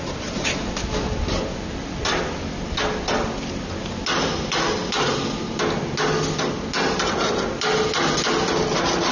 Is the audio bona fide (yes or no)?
yes